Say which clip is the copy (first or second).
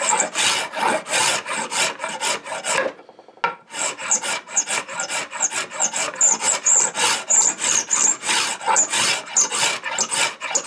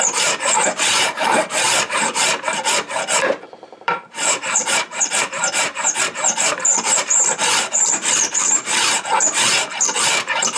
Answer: second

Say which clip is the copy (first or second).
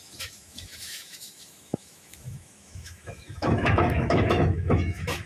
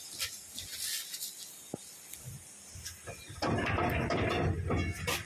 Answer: first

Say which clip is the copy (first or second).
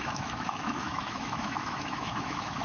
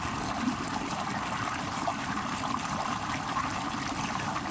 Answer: first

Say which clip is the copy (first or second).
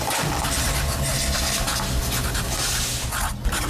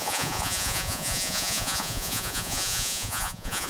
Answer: second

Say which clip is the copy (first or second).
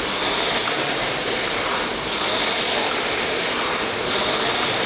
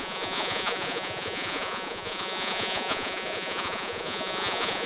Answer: second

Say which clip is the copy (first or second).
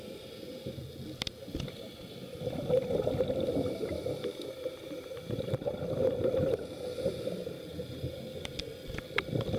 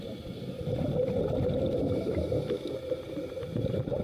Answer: second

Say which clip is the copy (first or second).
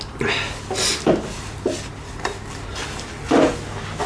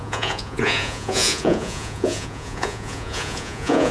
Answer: second